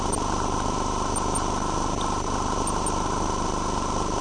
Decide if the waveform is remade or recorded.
recorded